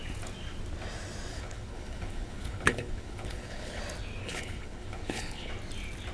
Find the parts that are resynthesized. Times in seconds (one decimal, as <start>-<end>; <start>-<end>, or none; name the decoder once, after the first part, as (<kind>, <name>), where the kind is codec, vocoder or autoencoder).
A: 1.3-3.8 (codec, HILCodec); 4.2-5.5